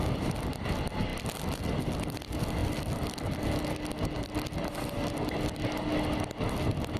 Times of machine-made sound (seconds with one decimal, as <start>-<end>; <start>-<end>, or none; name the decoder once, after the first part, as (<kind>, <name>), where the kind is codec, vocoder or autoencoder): none